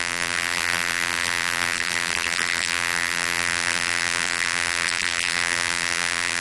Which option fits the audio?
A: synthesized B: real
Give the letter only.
A